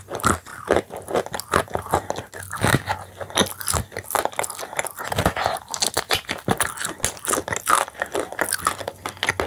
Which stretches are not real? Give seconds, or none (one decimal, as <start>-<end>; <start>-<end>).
none